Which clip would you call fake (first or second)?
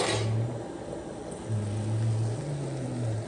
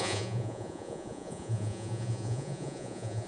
second